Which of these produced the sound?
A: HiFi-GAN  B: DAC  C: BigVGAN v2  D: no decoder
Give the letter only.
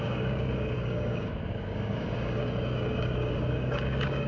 B